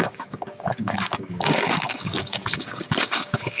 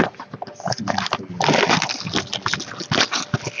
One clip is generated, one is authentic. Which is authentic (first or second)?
second